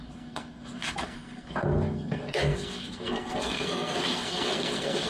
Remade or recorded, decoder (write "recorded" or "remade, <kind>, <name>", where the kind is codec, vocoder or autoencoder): remade, codec, SNAC